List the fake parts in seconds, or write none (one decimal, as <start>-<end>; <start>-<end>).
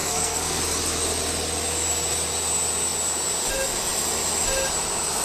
0.0-0.6